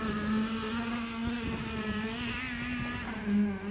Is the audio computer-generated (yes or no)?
no